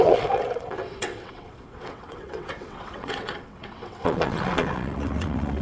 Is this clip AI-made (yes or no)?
yes